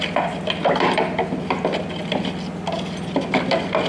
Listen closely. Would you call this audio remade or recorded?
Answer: recorded